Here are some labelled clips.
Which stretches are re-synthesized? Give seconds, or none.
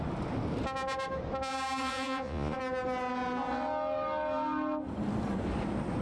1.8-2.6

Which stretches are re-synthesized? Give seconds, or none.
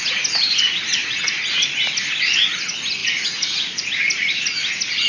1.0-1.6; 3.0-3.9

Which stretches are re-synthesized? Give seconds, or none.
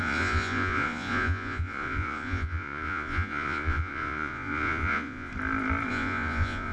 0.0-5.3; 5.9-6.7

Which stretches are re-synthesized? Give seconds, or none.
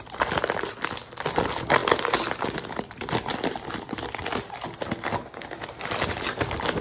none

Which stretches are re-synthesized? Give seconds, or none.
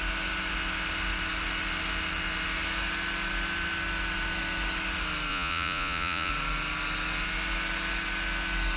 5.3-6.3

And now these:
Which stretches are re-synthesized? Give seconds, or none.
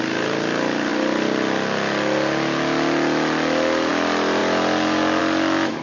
none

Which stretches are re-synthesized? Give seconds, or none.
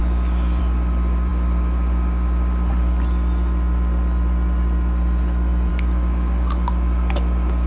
none